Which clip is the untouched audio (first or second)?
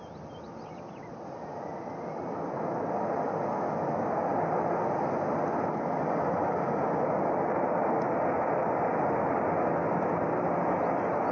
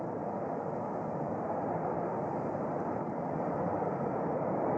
first